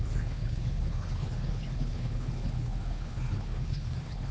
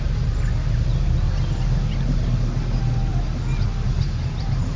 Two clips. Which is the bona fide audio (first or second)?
second